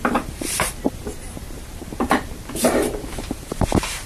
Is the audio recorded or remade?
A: remade